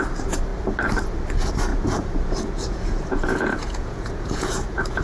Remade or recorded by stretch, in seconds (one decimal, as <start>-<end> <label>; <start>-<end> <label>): 0.0-1.7 recorded; 1.7-5.0 remade